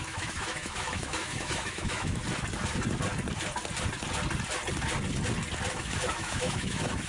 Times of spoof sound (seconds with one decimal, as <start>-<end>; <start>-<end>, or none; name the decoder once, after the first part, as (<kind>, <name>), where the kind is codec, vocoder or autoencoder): 0.0-2.2 (autoencoder, DAC-VAE); 5.7-7.1